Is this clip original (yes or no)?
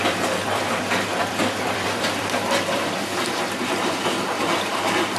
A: no